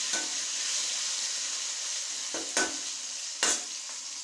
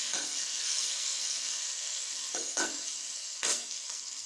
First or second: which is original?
first